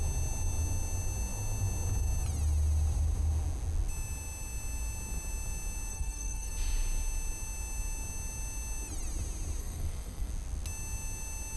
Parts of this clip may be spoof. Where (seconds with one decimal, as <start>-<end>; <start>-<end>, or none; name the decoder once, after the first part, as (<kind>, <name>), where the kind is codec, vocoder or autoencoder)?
5.9-6.5 (codec, SNAC); 9.6-10.3